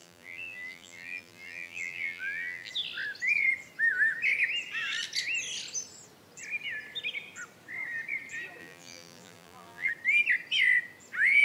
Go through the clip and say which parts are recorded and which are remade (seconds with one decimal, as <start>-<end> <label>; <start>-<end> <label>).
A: 0.0-2.7 remade; 2.7-8.6 recorded; 8.6-9.9 remade; 9.9-11.4 recorded